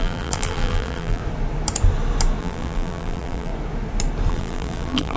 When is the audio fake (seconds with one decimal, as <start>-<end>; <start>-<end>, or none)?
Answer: 0.0-1.2; 2.4-3.5; 4.3-5.2